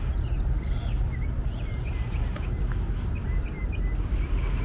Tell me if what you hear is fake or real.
real